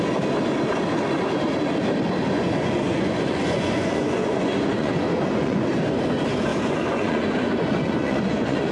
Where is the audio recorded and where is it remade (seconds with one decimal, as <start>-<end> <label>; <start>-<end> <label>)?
0.0-2.3 recorded; 2.3-5.7 remade; 5.7-6.5 recorded; 6.5-8.7 remade